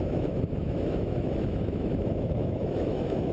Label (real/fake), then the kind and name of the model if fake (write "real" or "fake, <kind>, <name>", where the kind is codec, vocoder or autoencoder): fake, autoencoder, DAC-VAE